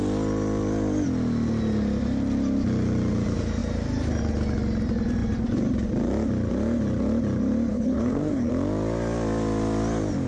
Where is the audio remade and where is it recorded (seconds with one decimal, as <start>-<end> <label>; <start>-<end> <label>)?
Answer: 0.0-7.7 recorded; 7.7-8.5 remade; 8.5-10.3 recorded